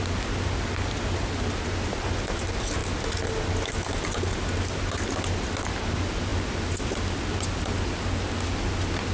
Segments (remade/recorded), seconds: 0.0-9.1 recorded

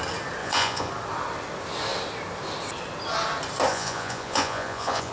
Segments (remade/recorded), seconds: 0.0-0.4 recorded; 0.4-0.9 remade; 0.9-3.7 recorded; 3.7-5.1 remade

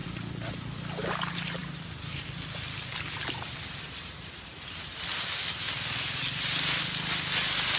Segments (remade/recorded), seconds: 0.0-7.8 recorded

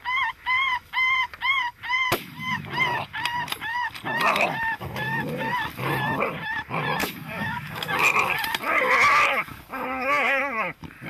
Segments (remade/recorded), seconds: 0.0-7.0 recorded; 7.0-7.9 remade; 7.9-9.5 recorded; 9.5-10.4 remade; 10.4-11.1 recorded

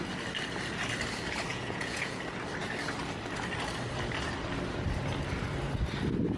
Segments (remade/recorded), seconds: 0.0-1.5 recorded; 1.5-2.2 remade; 2.2-6.4 recorded

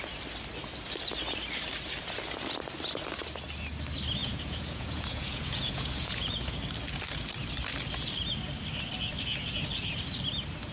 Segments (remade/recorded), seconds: 0.0-4.2 recorded; 4.2-6.6 remade; 6.6-10.7 recorded

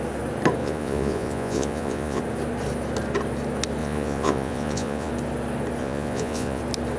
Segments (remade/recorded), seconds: 0.0-0.6 recorded; 0.6-2.2 remade; 2.2-3.8 recorded; 3.8-5.1 remade; 5.1-5.8 recorded; 5.8-6.6 remade; 6.6-7.0 recorded

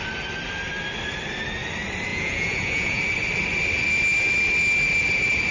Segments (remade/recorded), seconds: 0.0-2.1 recorded; 2.1-3.0 remade; 3.0-5.5 recorded